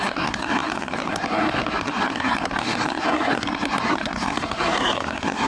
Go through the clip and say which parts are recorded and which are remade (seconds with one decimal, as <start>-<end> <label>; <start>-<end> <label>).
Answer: 0.0-5.5 remade